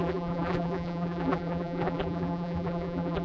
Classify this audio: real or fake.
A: fake